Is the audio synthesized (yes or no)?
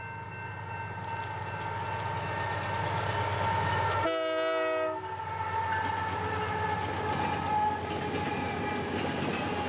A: no